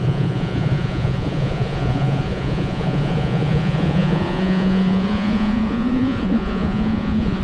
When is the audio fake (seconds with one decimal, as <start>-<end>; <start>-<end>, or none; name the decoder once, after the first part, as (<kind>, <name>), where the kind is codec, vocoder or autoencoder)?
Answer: 0.0-7.4 (vocoder, Vocos)